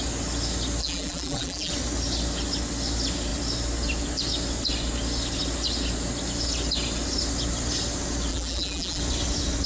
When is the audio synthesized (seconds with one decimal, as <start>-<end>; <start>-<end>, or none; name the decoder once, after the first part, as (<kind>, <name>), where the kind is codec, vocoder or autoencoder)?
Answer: 0.8-1.7 (vocoder, BigVGAN v2); 8.3-9.0